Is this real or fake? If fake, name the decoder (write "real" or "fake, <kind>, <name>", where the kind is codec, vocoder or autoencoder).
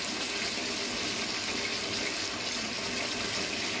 real